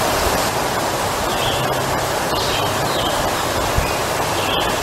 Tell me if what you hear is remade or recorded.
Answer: recorded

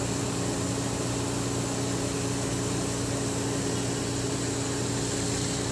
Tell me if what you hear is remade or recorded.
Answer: recorded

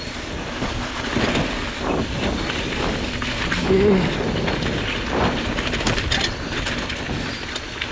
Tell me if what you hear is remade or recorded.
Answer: recorded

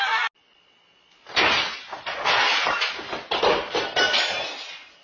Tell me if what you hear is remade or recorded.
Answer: recorded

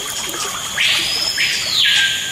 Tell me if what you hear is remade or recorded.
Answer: recorded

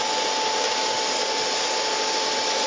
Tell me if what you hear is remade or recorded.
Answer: recorded